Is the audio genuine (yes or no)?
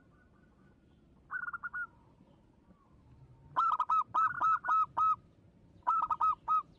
yes